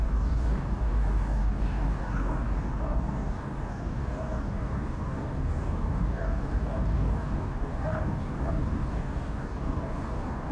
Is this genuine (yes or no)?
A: no